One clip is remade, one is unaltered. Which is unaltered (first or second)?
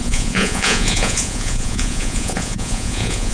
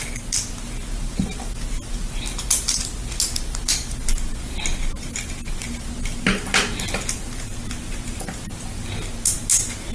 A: second